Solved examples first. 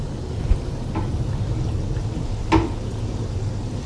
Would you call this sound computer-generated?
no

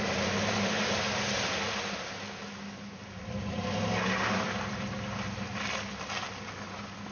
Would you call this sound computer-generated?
no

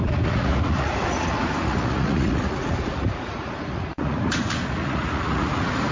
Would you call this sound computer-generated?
yes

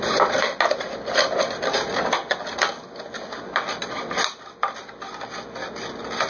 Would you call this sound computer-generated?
no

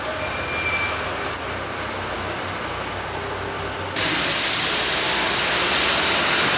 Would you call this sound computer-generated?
no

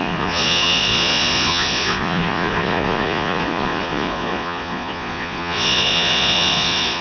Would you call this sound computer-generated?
yes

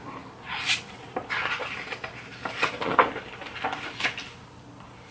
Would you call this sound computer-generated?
no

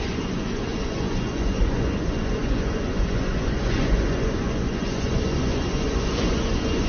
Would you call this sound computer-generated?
yes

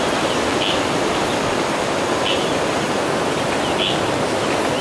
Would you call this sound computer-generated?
no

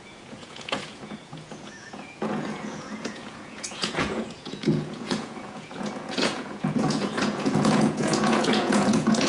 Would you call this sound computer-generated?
yes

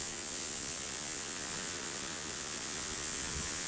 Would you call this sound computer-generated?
yes